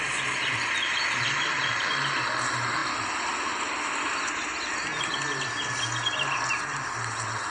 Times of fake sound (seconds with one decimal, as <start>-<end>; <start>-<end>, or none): none